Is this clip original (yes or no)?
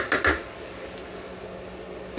yes